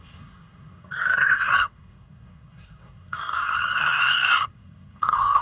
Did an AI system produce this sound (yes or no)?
yes